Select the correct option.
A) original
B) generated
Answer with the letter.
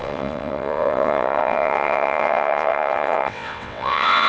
B